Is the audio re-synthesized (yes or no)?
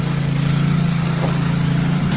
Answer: no